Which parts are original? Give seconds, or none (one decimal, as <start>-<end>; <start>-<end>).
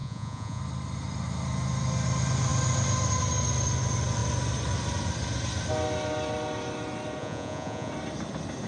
0.6-7.2; 7.9-8.7